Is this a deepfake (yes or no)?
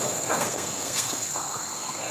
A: yes